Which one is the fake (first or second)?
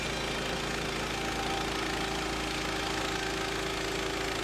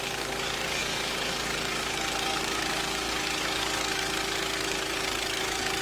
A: second